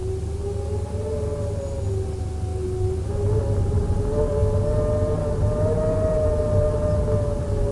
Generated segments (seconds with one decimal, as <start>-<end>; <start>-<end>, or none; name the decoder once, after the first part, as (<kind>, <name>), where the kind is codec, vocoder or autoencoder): none